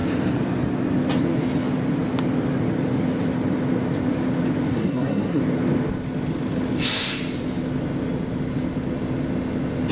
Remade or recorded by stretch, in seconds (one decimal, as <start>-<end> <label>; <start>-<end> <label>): 0.0-4.7 recorded; 4.7-5.4 remade; 5.4-9.9 recorded